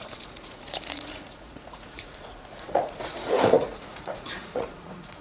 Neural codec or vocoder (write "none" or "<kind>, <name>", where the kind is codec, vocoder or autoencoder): vocoder, Vocos